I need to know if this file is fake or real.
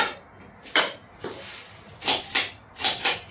real